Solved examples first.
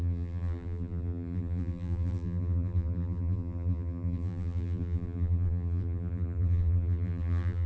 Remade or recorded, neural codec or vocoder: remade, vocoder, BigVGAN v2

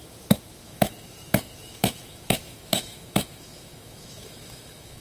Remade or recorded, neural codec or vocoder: remade, autoencoder, DAC-VAE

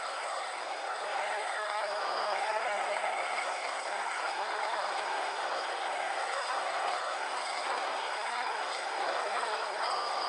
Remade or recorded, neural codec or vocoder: remade, codec, SNAC